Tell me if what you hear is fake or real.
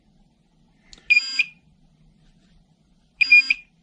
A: real